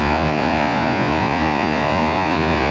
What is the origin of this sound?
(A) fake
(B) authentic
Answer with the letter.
A